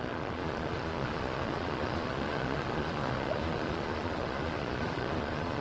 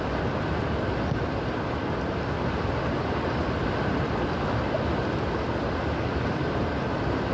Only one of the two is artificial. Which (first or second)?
first